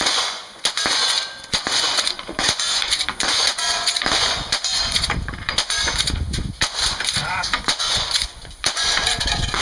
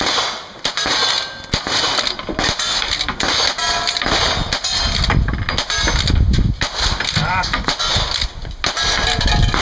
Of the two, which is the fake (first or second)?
first